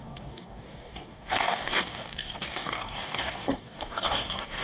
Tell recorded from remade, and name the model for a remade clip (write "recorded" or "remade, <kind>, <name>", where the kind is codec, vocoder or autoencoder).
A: remade, codec, DAC